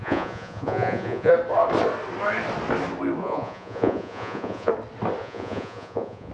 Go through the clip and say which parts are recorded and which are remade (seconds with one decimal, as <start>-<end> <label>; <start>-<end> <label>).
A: 0.0-1.3 remade; 1.3-3.2 recorded; 3.2-4.7 remade; 4.7-5.2 recorded; 5.2-6.3 remade